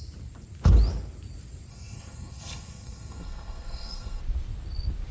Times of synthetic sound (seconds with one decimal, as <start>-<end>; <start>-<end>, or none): 1.7-4.2